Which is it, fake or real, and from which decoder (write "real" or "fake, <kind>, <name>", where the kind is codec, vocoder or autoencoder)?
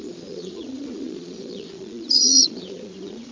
fake, vocoder, Vocos